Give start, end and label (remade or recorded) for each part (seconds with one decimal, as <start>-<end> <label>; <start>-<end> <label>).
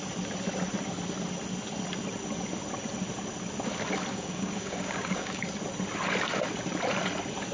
0.0-4.1 recorded; 4.1-5.4 remade; 5.4-7.5 recorded